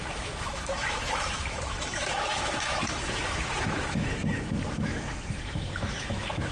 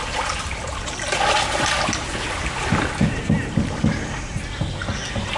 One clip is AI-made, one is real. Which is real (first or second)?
second